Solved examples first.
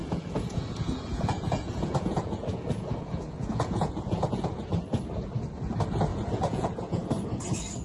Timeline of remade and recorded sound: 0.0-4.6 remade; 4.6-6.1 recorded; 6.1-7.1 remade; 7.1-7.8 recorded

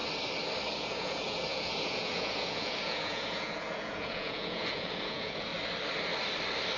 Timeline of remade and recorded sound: 0.0-0.8 recorded; 0.8-5.5 remade; 5.5-6.8 recorded

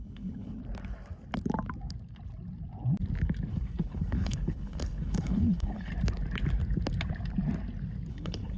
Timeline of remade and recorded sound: 0.0-0.6 remade; 0.6-3.5 recorded; 3.5-5.9 remade; 5.9-8.1 recorded; 8.1-8.6 remade

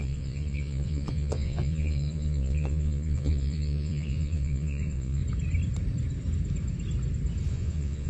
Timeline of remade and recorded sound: 0.0-5.2 remade; 5.2-7.5 recorded; 7.5-8.1 remade

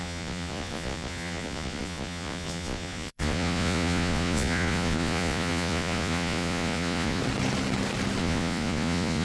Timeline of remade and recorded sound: 0.0-7.2 remade; 7.2-8.2 recorded; 8.2-9.2 remade

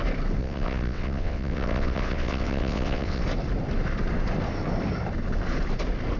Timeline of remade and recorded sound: 0.0-0.4 recorded; 0.4-3.2 remade; 3.2-6.2 recorded

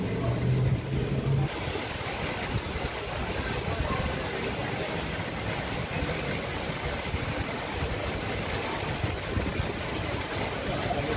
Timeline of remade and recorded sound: 0.0-11.2 recorded